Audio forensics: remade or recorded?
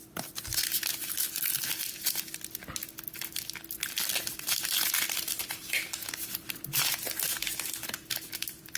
recorded